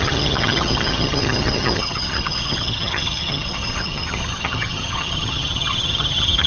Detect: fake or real fake